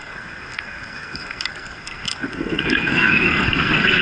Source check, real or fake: fake